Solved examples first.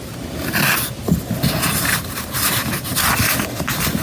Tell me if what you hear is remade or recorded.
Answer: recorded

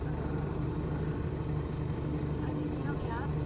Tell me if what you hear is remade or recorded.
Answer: recorded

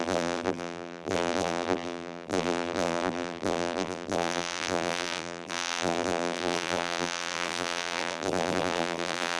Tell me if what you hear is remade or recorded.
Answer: remade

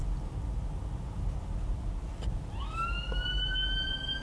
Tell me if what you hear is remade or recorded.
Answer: recorded